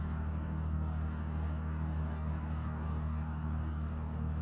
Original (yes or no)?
no